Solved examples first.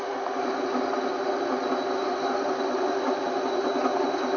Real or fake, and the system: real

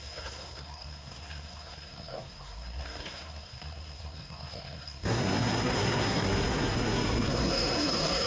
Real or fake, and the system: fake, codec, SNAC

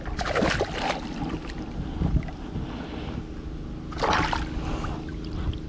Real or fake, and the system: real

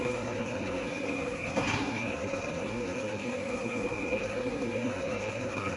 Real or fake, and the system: fake, codec, SNAC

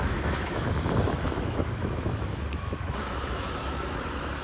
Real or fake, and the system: fake, autoencoder, DAC-VAE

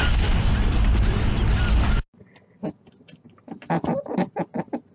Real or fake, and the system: real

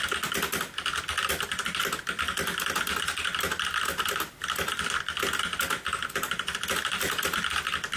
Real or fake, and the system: real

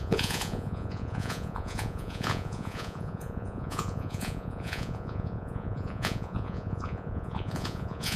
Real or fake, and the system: fake, vocoder, Vocos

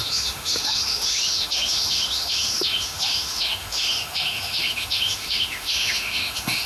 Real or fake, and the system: fake, autoencoder, DAC-VAE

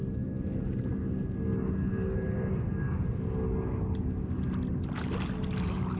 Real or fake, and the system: real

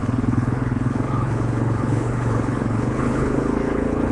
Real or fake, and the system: fake, codec, HILCodec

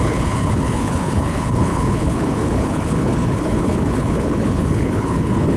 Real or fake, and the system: fake, codec, HILCodec